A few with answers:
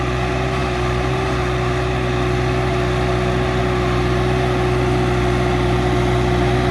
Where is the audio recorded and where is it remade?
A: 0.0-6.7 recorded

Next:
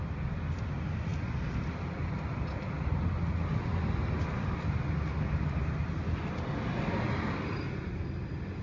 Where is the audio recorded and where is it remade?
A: 0.0-8.6 recorded

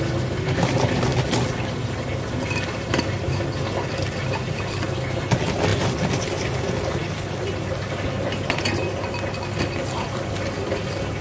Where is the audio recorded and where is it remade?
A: 0.0-1.1 recorded; 1.1-2.3 remade; 2.3-5.7 recorded; 5.7-7.5 remade; 7.5-11.2 recorded